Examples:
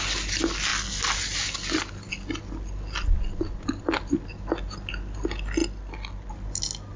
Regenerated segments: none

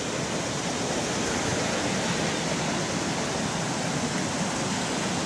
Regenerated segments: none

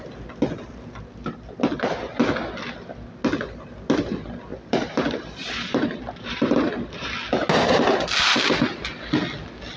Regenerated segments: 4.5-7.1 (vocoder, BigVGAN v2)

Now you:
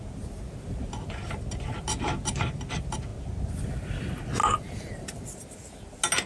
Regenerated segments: none

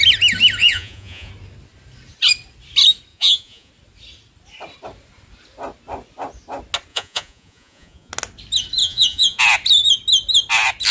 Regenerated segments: 0.6-1.3 (vocoder, Vocos); 3.1-3.7; 6.9-8.1; 8.8-9.4

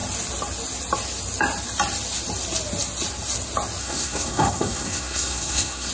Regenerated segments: 3.8-5.9 (codec, SNAC)